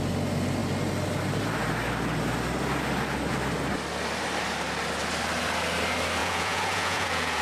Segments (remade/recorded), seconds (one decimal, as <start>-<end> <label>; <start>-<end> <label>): 0.0-6.2 recorded; 6.2-7.4 remade